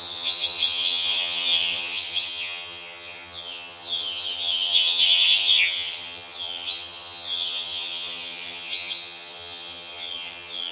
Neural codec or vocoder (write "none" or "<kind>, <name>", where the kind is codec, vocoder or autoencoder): vocoder, HiFi-GAN